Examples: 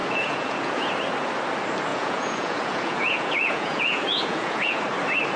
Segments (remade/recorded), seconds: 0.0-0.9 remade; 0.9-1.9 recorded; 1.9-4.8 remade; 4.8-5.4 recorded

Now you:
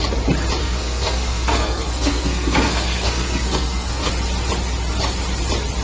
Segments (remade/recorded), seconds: 0.0-0.6 recorded; 0.6-4.1 remade; 4.1-5.8 recorded